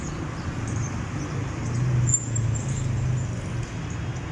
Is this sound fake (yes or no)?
no